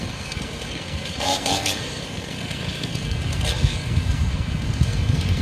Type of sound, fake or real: fake